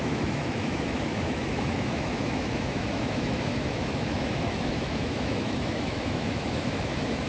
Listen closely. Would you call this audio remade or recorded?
remade